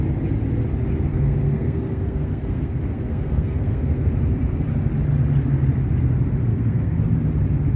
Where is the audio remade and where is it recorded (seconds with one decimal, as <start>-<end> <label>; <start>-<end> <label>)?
0.0-1.1 recorded; 1.1-4.1 remade; 4.1-6.5 recorded; 6.5-7.0 remade; 7.0-7.8 recorded